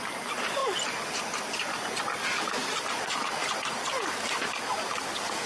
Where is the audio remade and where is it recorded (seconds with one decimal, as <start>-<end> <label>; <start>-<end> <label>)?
0.0-0.6 recorded; 0.6-3.9 remade; 3.9-5.5 recorded